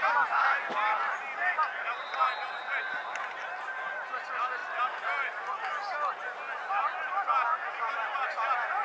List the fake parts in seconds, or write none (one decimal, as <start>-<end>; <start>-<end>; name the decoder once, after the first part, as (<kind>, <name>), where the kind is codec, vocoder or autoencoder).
none